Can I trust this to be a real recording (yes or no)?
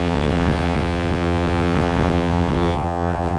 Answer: no